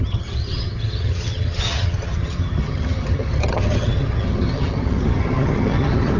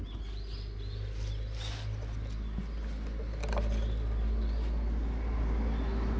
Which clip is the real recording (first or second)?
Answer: second